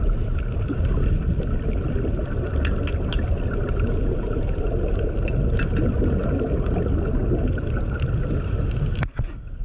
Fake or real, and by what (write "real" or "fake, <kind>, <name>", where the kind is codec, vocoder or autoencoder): real